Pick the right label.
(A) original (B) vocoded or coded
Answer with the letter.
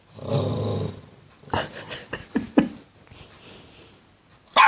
A